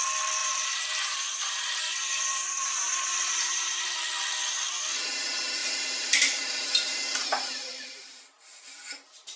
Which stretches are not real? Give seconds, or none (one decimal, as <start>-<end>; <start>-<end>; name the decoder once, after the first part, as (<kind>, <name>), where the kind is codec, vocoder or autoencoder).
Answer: 0.4-3.8 (vocoder, BigVGAN v2); 5.6-7.0; 7.7-8.2